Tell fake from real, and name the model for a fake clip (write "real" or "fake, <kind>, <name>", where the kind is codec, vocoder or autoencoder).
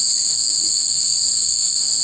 fake, codec, SNAC